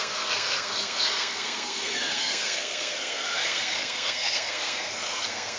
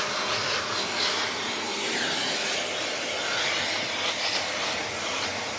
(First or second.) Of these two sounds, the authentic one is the second